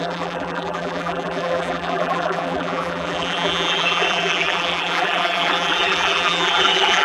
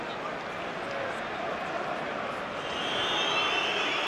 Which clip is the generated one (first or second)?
first